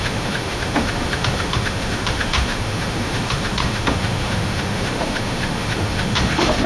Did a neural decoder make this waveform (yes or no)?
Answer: yes